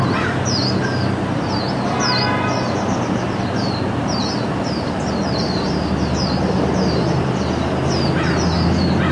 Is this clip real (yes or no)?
yes